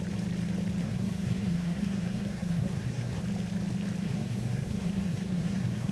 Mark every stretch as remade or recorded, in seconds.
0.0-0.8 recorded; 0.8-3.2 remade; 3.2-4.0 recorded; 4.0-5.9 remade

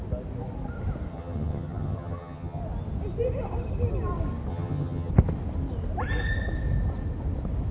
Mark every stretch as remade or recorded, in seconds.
0.0-1.1 recorded; 1.1-2.6 remade; 2.6-4.5 recorded; 4.5-5.1 remade; 5.1-7.7 recorded

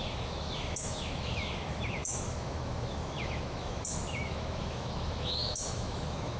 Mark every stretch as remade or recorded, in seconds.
0.0-6.4 remade